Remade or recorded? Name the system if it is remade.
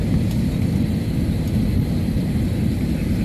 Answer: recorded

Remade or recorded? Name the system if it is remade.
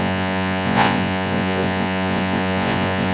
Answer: remade, vocoder, Vocos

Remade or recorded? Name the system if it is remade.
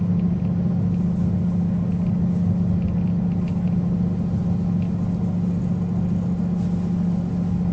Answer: recorded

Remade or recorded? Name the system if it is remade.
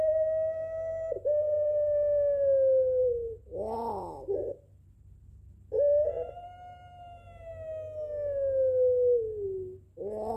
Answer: recorded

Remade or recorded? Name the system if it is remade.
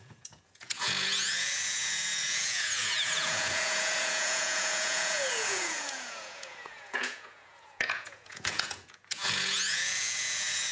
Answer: remade, vocoder, Vocos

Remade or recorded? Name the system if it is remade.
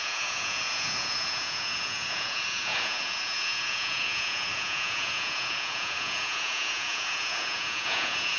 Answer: remade, vocoder, Vocos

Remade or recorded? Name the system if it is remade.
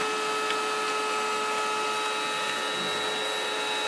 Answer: recorded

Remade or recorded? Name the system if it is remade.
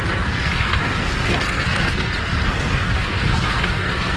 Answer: remade, codec, SNAC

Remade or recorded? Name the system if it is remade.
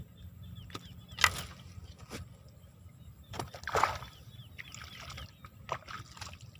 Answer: recorded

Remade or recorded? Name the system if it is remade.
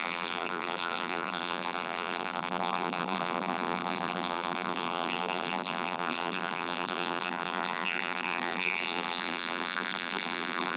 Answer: remade, vocoder, BigVGAN v2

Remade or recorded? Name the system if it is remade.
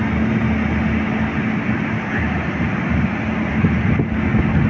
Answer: recorded